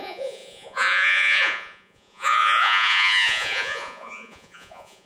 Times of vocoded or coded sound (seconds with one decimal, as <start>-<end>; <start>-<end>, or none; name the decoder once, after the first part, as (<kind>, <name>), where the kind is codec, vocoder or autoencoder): 0.0-5.1 (vocoder, Vocos)